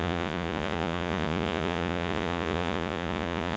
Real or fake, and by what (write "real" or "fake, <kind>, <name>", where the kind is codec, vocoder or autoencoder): fake, vocoder, Vocos